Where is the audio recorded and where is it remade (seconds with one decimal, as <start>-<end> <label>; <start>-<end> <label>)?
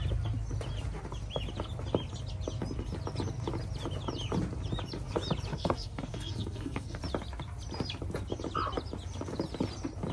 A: 0.0-5.5 recorded; 5.5-7.0 remade; 7.0-10.1 recorded